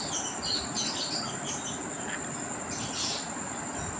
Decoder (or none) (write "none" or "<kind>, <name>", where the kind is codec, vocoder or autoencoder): none